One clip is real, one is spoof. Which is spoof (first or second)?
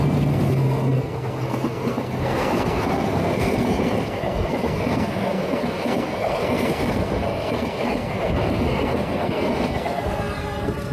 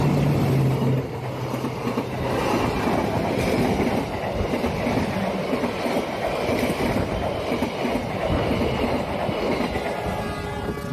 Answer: first